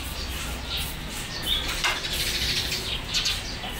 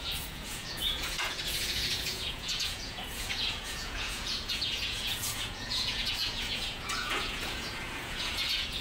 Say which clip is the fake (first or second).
second